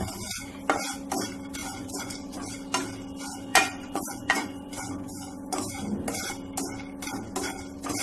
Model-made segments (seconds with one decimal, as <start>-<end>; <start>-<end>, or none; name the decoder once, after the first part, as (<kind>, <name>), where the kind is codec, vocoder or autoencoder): 1.6-2.5 (vocoder, Vocos); 3.5-5.7